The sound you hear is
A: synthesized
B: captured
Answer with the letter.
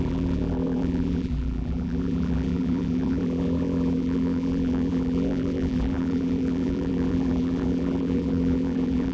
A